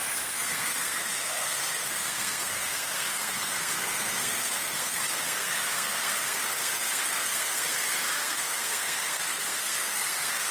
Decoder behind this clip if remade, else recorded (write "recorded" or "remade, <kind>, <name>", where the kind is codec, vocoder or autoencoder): remade, codec, SNAC